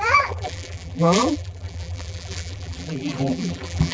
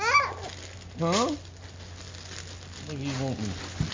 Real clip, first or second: second